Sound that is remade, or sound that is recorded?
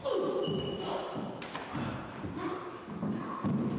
recorded